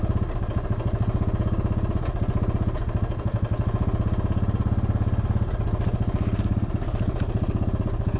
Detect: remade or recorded recorded